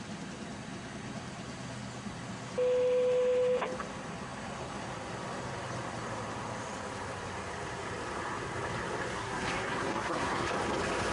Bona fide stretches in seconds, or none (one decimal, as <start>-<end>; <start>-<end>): 0.0-9.1; 10.5-11.1